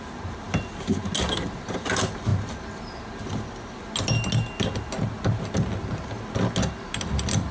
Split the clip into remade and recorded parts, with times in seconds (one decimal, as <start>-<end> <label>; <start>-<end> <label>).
0.0-7.5 recorded